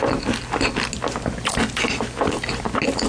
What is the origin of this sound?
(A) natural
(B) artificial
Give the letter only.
A